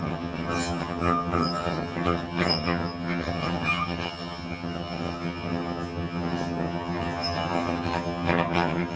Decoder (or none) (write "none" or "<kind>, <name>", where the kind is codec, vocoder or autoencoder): vocoder, HiFi-GAN